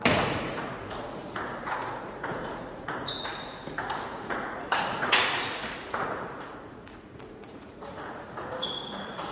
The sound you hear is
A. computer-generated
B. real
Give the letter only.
A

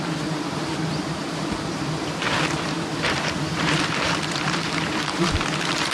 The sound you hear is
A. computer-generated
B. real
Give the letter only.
A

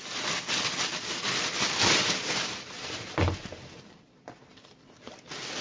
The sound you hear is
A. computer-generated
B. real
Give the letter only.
B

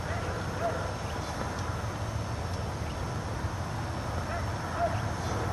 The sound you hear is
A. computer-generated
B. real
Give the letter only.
B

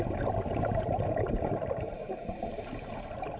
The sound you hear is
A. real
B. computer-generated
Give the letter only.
B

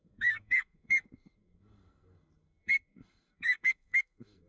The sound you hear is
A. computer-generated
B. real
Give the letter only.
A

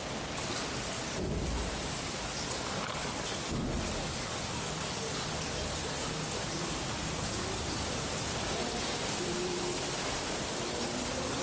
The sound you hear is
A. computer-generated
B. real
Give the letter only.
B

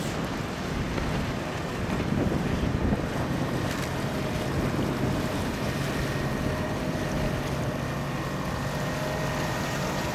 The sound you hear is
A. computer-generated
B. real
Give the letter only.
B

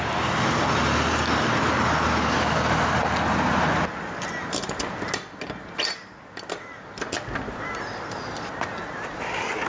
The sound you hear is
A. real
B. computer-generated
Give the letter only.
A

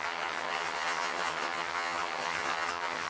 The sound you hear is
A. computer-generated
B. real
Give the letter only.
A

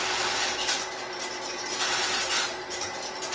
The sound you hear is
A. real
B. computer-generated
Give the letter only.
A